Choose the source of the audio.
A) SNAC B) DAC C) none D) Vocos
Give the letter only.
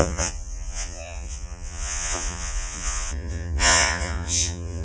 D